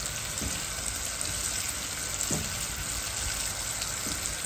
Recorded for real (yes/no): yes